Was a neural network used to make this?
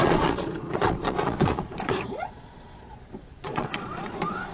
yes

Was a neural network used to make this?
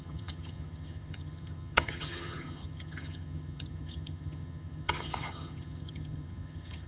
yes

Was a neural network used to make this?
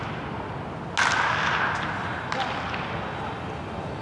no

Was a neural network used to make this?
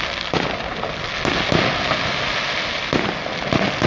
no